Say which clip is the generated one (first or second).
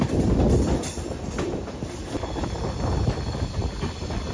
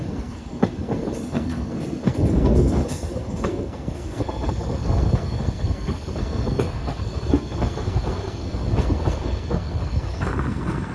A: second